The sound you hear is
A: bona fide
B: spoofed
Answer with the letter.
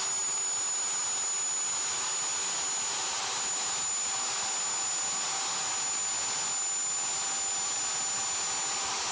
A